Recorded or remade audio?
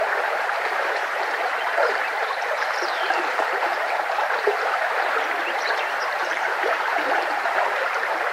remade